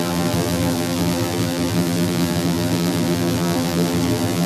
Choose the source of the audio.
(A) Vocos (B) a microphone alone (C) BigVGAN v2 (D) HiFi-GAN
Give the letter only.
C